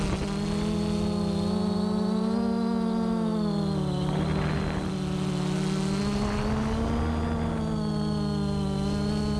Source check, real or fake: real